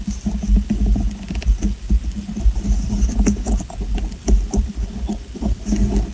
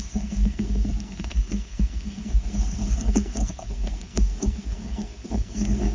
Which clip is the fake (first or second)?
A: second